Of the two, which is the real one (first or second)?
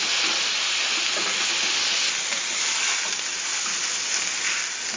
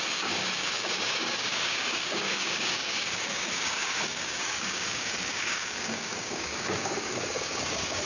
first